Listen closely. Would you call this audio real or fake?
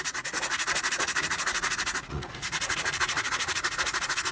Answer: fake